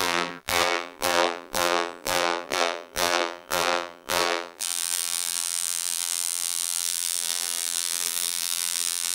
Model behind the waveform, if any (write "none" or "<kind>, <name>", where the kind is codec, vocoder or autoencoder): vocoder, BigVGAN v2